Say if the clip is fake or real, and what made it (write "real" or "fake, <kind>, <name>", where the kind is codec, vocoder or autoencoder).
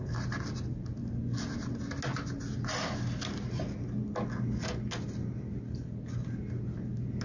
real